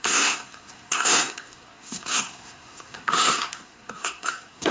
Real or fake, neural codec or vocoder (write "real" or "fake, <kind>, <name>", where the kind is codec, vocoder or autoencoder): fake, codec, SNAC